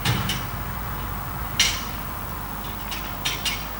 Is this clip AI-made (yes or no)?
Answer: no